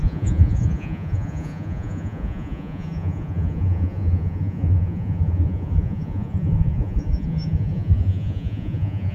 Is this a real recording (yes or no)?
no